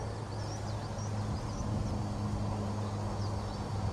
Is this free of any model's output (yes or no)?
yes